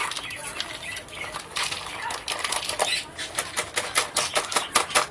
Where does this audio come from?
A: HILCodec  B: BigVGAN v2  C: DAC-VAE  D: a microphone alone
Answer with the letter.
D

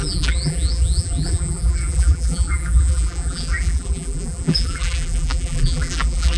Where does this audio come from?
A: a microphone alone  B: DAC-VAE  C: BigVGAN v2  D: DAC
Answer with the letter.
C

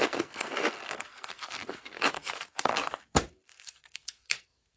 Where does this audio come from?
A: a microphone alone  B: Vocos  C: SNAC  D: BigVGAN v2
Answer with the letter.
C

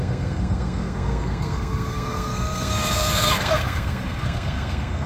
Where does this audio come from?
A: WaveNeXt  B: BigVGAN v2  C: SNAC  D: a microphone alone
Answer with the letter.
C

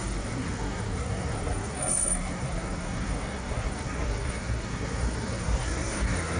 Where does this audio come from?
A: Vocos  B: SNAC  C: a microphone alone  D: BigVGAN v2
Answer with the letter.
B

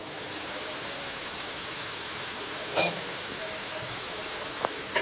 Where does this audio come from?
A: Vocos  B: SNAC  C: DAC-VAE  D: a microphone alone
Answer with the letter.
C